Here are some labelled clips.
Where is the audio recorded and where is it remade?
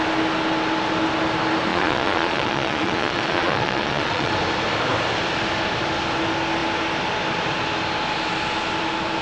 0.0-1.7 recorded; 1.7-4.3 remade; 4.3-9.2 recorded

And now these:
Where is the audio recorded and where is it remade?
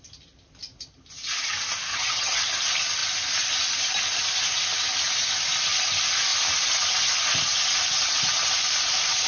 0.0-1.9 recorded; 1.9-2.4 remade; 2.4-9.3 recorded